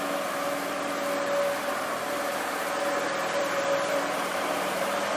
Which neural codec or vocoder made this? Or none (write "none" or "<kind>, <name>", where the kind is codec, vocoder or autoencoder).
vocoder, BigVGAN v2